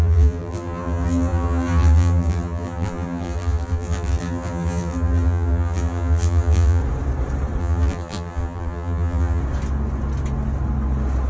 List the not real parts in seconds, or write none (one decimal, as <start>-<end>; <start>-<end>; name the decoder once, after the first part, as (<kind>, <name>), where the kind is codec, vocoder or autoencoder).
0.0-6.8 (vocoder, BigVGAN v2); 7.6-9.4

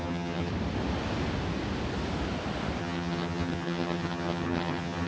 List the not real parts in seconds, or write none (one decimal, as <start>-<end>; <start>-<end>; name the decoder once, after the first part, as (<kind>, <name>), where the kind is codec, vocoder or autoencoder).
0.0-0.5 (vocoder, HiFi-GAN); 2.8-5.1

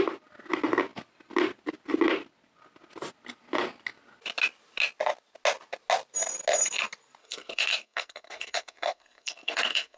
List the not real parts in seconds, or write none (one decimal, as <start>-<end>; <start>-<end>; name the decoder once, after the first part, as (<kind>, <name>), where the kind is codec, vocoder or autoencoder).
7.2-10.0 (codec, SNAC)

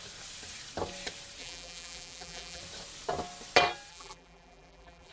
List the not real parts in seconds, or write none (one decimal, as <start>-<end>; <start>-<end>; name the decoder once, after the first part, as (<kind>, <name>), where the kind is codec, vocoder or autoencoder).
1.4-2.6 (vocoder, BigVGAN v2); 3.9-5.1

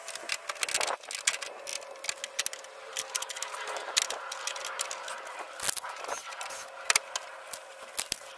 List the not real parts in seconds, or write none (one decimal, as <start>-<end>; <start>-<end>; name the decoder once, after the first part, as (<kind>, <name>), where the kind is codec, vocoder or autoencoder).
none

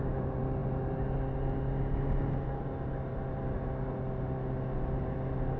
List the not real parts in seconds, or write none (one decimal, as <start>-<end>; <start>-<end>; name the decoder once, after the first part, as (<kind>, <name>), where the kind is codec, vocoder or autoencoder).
none

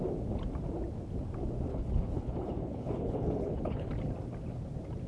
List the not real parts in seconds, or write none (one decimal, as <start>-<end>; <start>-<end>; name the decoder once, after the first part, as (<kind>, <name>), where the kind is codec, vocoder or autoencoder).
1.7-3.9 (codec, HILCodec)